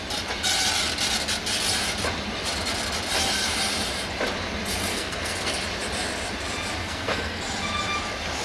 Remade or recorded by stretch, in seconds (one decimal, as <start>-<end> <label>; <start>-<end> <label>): 0.0-4.9 recorded; 4.9-5.6 remade; 5.6-6.8 recorded; 6.8-7.4 remade; 7.4-8.4 recorded